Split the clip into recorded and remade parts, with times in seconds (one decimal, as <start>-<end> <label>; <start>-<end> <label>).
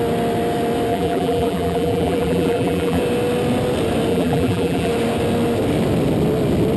0.0-0.9 recorded; 0.9-3.0 remade; 3.0-4.1 recorded; 4.1-4.9 remade; 4.9-6.8 recorded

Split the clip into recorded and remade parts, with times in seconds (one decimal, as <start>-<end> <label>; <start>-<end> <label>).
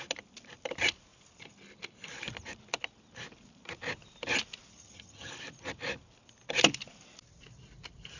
0.0-4.7 recorded; 4.7-5.3 remade; 5.3-8.2 recorded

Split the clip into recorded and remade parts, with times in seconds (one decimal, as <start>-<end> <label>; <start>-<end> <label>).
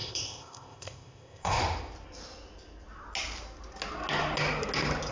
0.0-1.6 remade; 1.6-5.1 recorded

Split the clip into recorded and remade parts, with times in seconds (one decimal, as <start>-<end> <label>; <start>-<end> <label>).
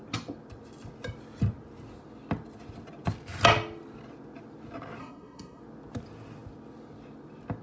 0.0-5.0 recorded; 5.0-5.6 remade; 5.6-7.6 recorded